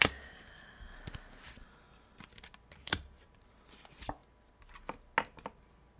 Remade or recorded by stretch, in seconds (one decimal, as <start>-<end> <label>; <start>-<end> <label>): 0.0-6.0 recorded